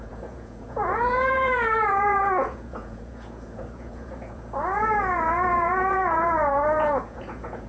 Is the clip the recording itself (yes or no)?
no